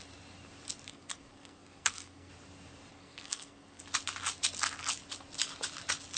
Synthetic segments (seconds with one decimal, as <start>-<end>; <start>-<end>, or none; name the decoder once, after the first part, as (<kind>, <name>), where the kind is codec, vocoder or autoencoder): 0.9-2.3 (codec, SNAC); 2.9-3.8